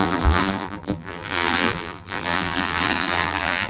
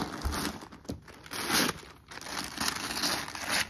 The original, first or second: second